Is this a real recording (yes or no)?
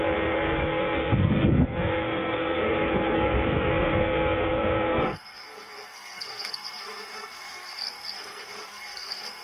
no